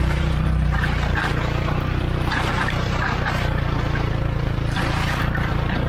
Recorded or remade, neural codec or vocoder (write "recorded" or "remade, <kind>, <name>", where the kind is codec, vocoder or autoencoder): remade, vocoder, BigVGAN v2